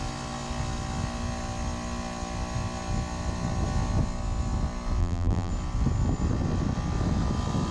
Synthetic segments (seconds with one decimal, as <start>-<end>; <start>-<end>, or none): 5.0-5.5